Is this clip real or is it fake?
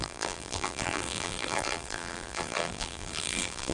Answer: fake